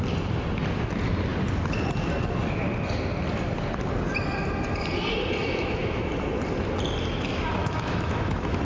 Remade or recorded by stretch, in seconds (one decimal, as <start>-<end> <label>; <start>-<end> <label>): 0.0-5.4 recorded; 5.4-6.1 remade; 6.1-7.6 recorded; 7.6-8.6 remade

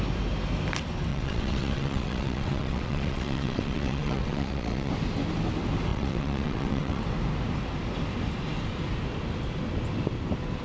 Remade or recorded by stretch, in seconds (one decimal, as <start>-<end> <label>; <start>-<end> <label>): 0.0-1.1 recorded; 1.1-4.9 remade; 4.9-5.9 recorded; 5.9-7.0 remade; 7.0-10.6 recorded

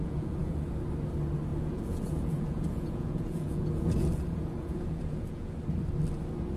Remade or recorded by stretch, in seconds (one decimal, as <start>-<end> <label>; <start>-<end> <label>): 0.0-0.6 remade; 0.6-1.5 recorded; 1.5-5.5 remade; 5.5-6.6 recorded

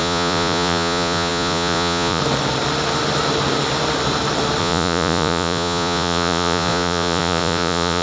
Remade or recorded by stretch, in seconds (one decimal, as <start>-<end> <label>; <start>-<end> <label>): 0.0-2.2 remade; 2.2-4.6 recorded; 4.6-8.0 remade